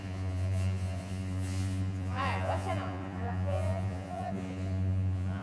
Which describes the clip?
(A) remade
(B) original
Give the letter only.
A